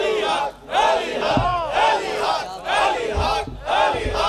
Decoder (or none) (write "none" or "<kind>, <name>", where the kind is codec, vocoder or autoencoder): none